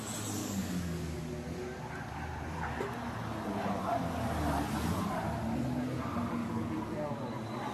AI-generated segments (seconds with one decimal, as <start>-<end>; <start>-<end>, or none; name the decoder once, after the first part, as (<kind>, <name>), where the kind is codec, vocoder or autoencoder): 0.4-1.3 (codec, DAC); 6.4-7.1